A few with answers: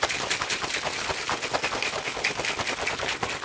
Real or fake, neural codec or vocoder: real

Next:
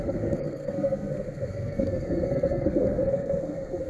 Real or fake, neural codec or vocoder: fake, codec, SNAC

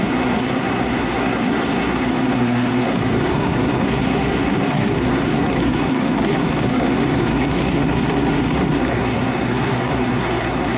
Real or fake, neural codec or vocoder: fake, codec, SNAC